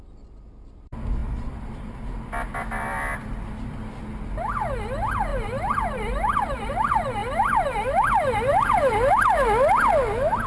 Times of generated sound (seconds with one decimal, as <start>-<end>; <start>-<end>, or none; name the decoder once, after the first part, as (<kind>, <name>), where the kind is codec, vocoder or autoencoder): 1.2-4.0 (vocoder, BigVGAN v2); 5.3-6.7; 7.2-9.1